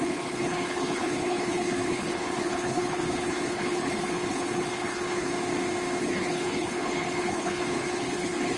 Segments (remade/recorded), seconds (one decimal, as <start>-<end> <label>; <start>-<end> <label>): 0.0-5.3 remade; 5.3-6.0 recorded; 6.0-8.6 remade